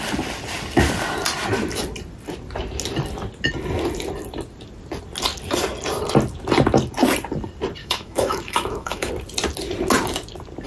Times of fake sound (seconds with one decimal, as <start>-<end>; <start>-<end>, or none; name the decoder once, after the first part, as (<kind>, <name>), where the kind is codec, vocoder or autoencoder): 7.8-9.1 (autoencoder, DAC-VAE)